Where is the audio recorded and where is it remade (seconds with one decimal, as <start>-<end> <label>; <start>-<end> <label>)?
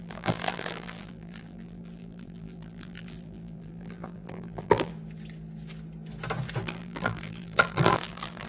0.0-4.9 remade; 4.9-6.6 recorded; 6.6-8.5 remade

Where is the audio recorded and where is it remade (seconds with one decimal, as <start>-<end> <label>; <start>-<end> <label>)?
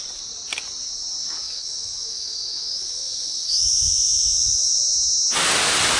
0.0-1.2 recorded; 1.2-4.8 remade; 4.8-6.0 recorded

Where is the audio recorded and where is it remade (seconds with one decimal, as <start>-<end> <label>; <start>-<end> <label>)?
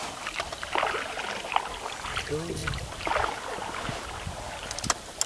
0.0-5.3 recorded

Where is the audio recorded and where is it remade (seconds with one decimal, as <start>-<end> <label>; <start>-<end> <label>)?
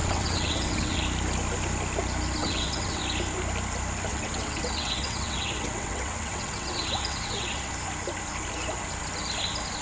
0.0-1.0 remade; 1.0-2.4 recorded; 2.4-3.0 remade; 3.0-4.1 recorded; 4.1-7.7 remade; 7.7-9.8 recorded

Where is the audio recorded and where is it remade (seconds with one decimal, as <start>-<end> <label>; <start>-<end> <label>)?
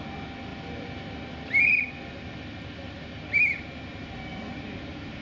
0.0-5.2 recorded